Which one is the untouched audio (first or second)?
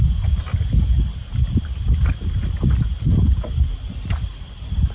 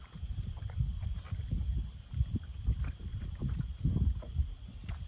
first